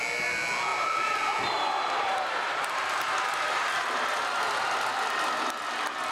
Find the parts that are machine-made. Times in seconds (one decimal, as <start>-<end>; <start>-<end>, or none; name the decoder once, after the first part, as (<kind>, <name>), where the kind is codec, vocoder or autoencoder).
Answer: 0.7-4.4 (vocoder, BigVGAN v2)